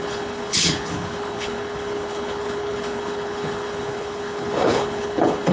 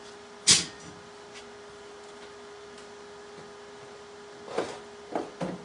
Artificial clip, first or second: first